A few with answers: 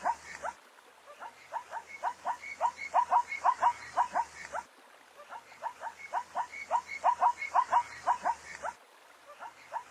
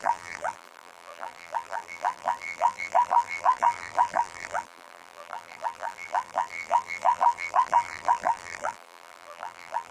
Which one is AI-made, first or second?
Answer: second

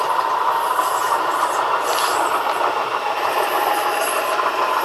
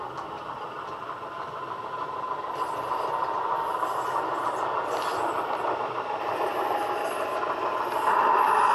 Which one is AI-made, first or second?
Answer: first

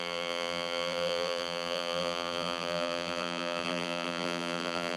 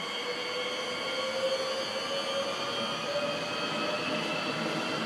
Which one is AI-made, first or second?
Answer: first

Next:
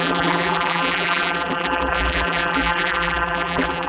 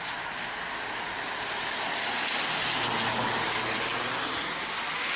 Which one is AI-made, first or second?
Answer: first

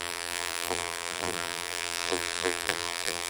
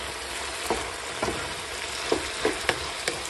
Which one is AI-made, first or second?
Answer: first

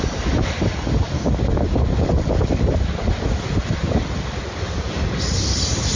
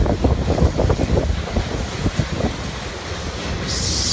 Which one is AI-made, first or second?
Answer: first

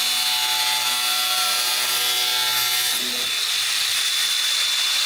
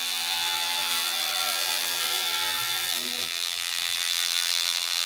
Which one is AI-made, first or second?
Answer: second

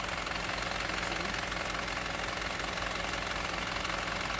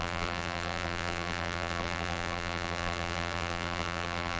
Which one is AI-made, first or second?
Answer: second